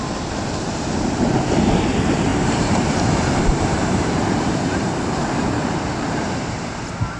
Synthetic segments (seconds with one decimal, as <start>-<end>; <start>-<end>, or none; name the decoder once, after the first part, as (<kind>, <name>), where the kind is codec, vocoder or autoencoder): 2.3-4.9 (vocoder, BigVGAN v2); 5.4-6.7